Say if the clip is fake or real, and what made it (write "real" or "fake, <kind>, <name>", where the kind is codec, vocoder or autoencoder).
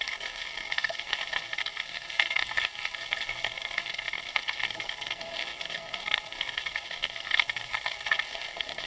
fake, codec, SNAC